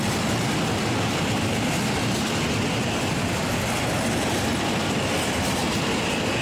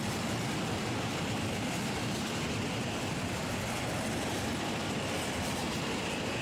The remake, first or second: second